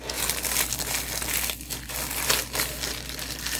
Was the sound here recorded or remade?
recorded